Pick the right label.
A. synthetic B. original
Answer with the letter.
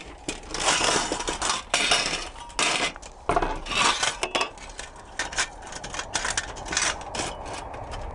B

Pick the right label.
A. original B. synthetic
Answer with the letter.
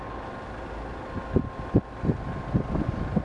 A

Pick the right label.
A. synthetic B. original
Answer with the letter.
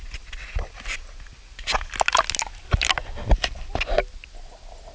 B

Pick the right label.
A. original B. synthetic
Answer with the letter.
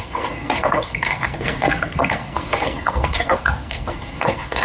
B